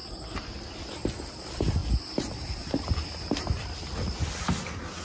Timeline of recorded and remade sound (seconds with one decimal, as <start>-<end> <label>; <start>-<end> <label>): 0.0-5.0 recorded